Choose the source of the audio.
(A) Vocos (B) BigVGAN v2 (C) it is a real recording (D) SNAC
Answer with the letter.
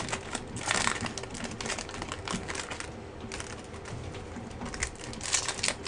C